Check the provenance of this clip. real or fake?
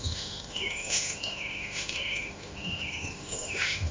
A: fake